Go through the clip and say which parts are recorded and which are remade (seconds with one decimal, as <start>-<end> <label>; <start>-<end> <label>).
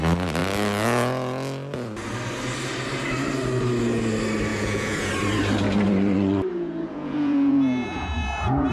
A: 0.0-4.5 recorded; 4.5-5.1 remade; 5.1-6.5 recorded; 6.5-8.7 remade